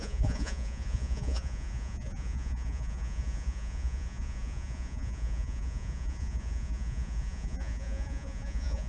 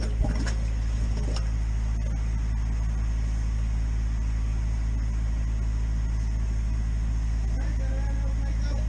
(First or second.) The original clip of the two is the second